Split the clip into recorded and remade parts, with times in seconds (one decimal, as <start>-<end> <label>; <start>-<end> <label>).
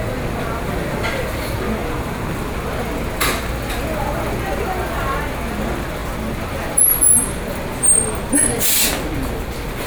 0.0-9.9 recorded